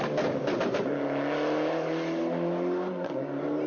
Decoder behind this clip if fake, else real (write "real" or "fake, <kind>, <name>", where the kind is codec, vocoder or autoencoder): real